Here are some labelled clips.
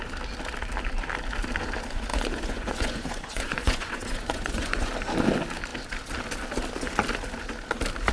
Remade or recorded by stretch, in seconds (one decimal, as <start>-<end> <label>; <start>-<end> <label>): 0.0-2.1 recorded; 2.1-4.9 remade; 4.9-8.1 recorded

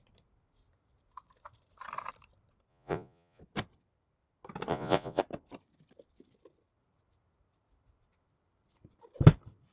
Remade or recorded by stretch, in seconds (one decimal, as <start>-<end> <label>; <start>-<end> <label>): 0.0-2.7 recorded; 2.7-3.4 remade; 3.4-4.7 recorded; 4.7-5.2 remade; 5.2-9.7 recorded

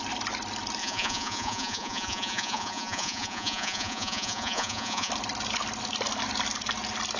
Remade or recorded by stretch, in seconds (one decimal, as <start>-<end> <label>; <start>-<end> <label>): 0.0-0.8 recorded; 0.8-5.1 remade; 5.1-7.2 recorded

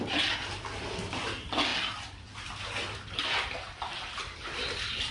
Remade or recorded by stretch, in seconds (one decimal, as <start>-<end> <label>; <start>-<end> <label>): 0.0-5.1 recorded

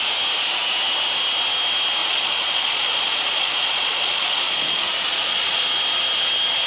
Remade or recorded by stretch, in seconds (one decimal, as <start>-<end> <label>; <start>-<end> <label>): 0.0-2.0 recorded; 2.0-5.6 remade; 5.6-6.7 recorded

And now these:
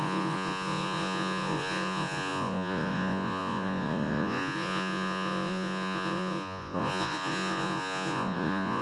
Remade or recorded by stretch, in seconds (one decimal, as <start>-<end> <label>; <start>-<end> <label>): 0.0-8.8 remade

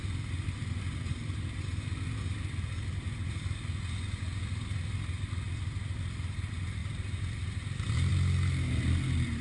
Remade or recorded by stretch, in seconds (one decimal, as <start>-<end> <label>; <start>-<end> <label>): 0.0-9.4 recorded